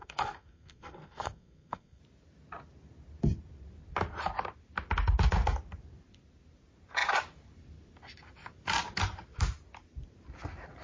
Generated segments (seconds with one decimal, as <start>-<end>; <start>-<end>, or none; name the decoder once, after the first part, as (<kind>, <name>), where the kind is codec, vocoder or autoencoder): 0.0-2.0 (codec, SNAC)